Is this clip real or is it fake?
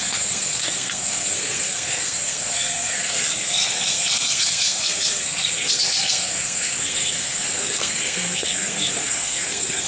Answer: fake